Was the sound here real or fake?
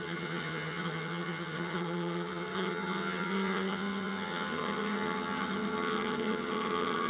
fake